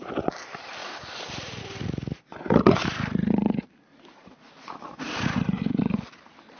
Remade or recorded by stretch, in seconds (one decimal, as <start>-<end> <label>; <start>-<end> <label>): 0.0-6.6 recorded